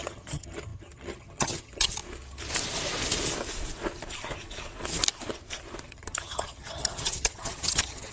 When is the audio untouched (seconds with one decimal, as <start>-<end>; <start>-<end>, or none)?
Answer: 2.0-5.9